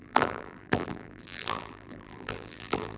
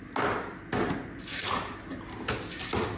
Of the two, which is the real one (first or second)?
second